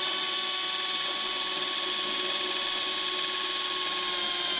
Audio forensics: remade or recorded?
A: recorded